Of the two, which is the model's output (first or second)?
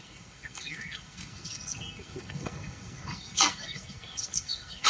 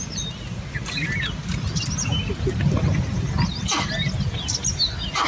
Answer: first